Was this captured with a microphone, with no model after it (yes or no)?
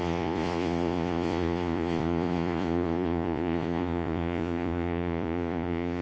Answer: no